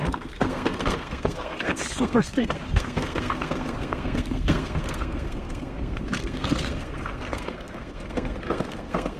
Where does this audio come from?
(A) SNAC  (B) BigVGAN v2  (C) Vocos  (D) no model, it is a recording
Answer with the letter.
A